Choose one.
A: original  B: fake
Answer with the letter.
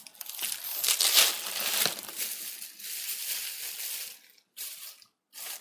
A